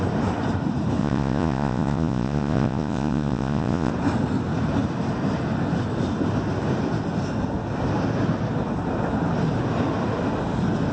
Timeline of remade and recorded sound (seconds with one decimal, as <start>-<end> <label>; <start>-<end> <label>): 0.0-1.0 recorded; 1.0-3.9 remade; 3.9-10.9 recorded